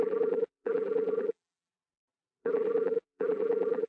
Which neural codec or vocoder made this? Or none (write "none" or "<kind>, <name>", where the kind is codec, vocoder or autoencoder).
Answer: vocoder, BigVGAN v2